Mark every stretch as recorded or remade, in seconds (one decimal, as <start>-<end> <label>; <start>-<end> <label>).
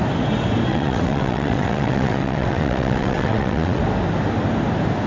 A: 0.0-0.7 recorded; 0.7-3.8 remade; 3.8-5.1 recorded